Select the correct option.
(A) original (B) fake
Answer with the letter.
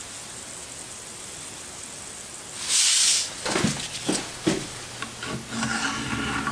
A